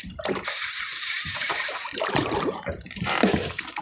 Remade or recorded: remade